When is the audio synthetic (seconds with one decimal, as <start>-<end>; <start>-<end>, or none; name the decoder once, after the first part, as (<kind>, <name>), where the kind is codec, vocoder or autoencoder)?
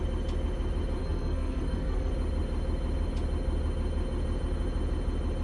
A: 1.0-2.1 (codec, SNAC)